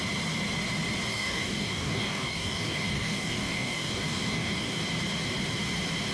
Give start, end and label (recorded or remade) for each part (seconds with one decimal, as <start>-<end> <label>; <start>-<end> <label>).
0.0-1.1 recorded; 1.1-4.8 remade; 4.8-6.1 recorded